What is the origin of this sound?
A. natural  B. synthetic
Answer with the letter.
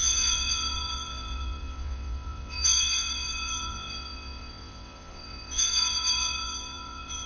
B